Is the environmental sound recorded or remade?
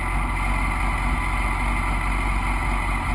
recorded